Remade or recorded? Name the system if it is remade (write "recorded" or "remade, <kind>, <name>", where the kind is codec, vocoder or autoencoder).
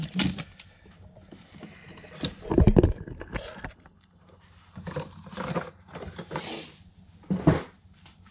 remade, vocoder, BigVGAN v2